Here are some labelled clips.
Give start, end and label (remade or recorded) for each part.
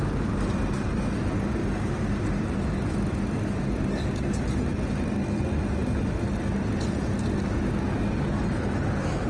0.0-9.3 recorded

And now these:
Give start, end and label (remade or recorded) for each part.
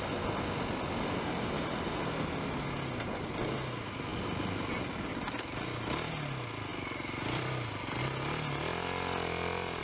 0.0-6.7 recorded; 6.7-8.0 remade; 8.0-9.8 recorded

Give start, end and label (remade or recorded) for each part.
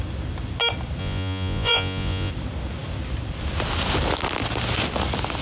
0.0-1.0 recorded; 1.0-2.3 remade; 2.3-5.4 recorded